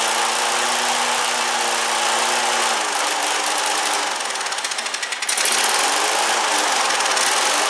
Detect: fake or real real